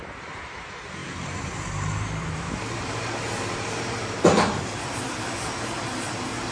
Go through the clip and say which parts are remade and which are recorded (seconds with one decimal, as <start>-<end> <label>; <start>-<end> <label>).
0.0-6.5 remade